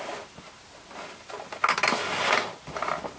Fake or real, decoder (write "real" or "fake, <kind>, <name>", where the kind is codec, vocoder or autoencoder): real